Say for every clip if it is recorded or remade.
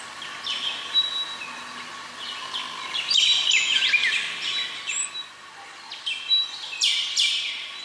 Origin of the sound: recorded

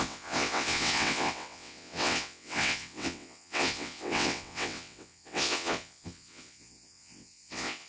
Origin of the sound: remade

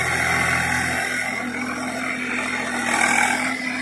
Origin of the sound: recorded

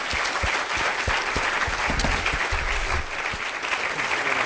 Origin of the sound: recorded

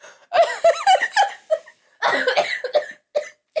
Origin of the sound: recorded